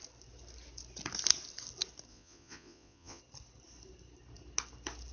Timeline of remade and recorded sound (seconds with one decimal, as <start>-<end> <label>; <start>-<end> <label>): 0.0-2.1 recorded; 2.1-3.2 remade; 3.2-5.1 recorded